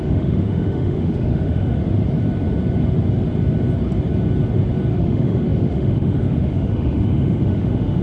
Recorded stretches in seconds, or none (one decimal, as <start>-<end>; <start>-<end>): 1.8-4.9